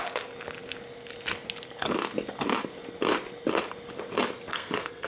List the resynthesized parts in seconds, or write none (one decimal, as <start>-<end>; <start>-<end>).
4.5-5.1